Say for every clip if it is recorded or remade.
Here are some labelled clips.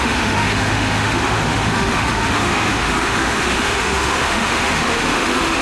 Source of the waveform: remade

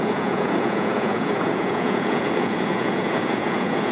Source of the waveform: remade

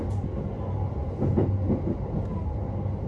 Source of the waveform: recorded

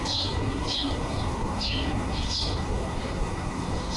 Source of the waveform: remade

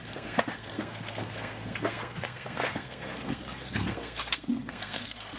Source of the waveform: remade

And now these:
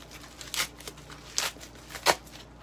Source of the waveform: recorded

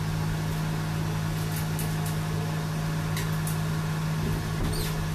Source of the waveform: recorded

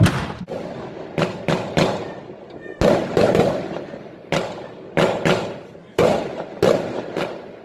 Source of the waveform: recorded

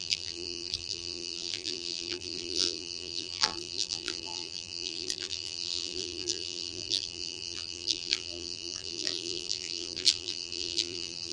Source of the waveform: remade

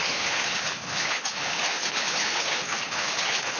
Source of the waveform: remade